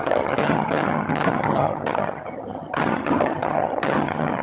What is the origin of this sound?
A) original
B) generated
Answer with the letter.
B